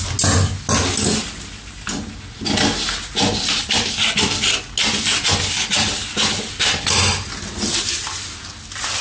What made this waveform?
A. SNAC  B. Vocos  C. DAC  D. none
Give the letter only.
D